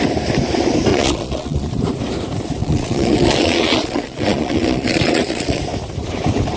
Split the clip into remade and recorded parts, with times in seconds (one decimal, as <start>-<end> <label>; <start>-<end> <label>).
0.0-0.9 recorded; 0.9-1.7 remade; 1.7-2.6 recorded; 2.6-5.6 remade; 5.6-6.6 recorded